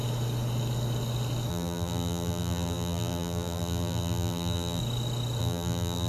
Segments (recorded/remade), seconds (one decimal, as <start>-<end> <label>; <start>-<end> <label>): 0.0-1.5 recorded; 1.5-4.8 remade; 4.8-5.4 recorded; 5.4-6.1 remade

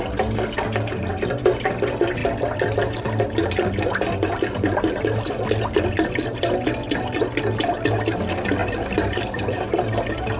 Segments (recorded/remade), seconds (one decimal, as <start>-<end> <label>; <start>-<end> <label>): 0.0-8.6 recorded; 8.6-10.4 remade